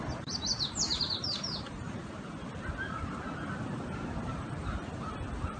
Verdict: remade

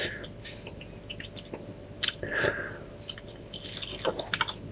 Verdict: recorded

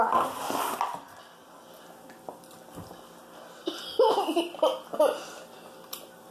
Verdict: recorded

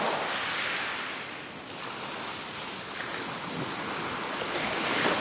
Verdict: recorded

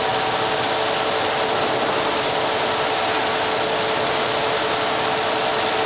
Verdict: recorded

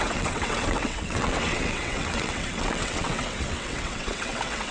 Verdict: remade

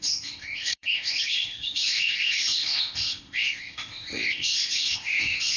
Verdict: remade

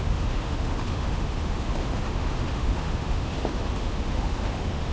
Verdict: remade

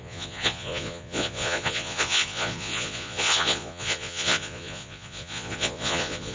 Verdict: remade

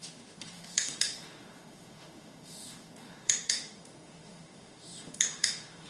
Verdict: remade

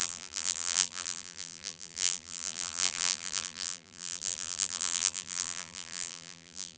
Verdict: remade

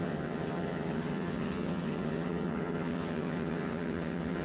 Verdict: remade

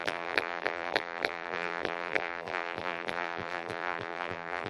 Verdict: remade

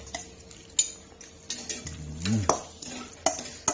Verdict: recorded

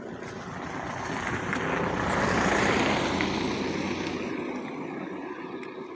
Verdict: recorded